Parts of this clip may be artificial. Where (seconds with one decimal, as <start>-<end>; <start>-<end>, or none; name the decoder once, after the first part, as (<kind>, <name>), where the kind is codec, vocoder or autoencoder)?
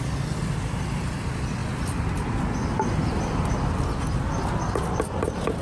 none